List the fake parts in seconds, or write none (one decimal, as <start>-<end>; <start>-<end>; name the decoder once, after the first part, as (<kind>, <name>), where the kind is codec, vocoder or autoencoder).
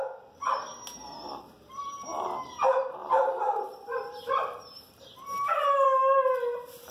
3.0-6.0 (vocoder, BigVGAN v2)